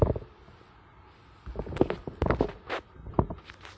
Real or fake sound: real